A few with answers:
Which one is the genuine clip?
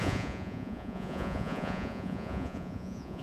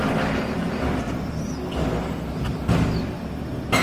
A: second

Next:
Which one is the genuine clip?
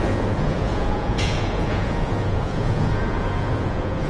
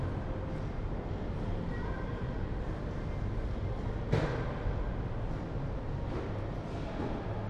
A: second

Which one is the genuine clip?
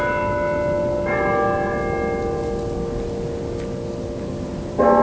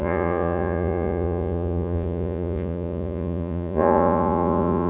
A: first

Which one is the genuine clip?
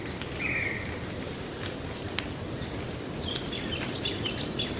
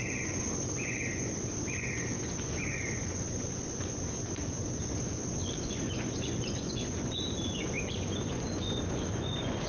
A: first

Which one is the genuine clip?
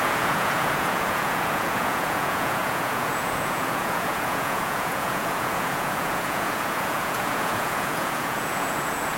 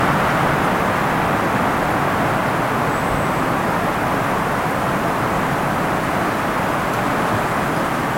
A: second